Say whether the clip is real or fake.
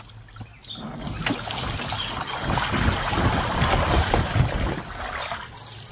real